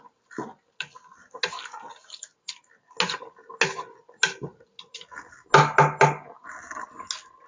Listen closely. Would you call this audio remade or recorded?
recorded